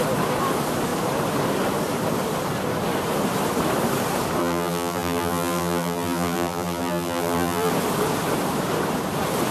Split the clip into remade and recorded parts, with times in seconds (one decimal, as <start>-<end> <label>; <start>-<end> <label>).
0.0-4.4 recorded; 4.4-7.7 remade; 7.7-9.5 recorded

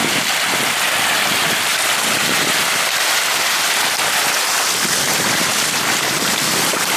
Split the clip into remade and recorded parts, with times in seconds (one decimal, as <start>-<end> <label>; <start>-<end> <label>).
0.0-1.7 remade; 1.7-5.0 recorded; 5.0-7.0 remade